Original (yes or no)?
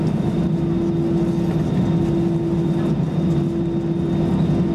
yes